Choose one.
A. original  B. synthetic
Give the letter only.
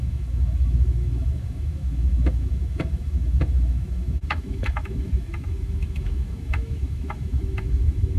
B